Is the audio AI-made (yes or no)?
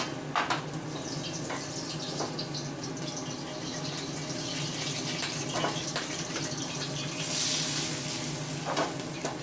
no